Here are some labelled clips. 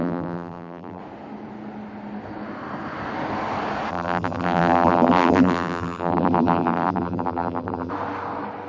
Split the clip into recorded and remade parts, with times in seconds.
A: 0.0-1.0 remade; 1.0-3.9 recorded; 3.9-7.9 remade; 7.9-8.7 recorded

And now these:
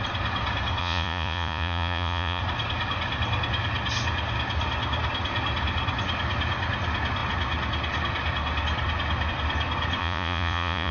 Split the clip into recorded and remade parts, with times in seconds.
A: 0.0-0.8 recorded; 0.8-2.4 remade; 2.4-10.0 recorded; 10.0-10.9 remade